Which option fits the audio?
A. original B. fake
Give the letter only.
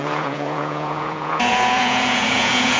B